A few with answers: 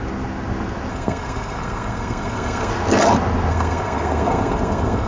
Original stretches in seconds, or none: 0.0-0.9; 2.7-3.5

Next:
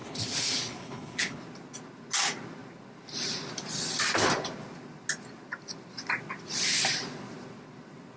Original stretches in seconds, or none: 1.4-8.2

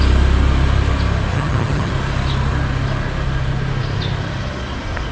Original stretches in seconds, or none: 0.0-1.3; 1.9-5.1

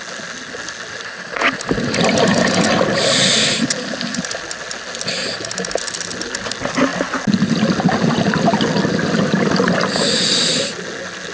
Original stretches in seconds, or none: 0.0-11.3

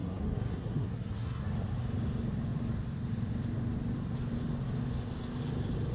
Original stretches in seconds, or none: 1.4-5.9

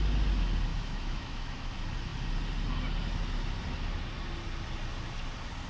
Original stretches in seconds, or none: 0.0-0.7; 1.7-5.7

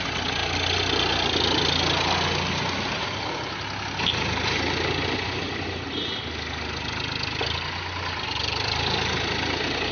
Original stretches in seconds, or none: 0.0-9.9

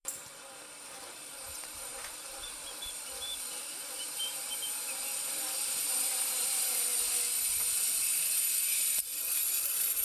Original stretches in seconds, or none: 6.9-9.2